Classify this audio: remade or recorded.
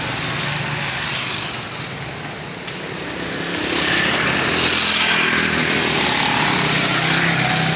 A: recorded